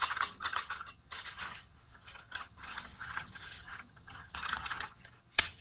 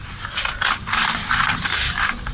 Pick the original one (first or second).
second